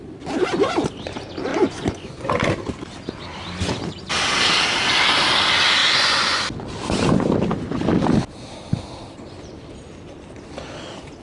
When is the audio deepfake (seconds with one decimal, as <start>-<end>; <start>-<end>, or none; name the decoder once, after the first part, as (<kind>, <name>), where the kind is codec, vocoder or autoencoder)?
1.5-2.3 (vocoder, Vocos); 5.8-6.4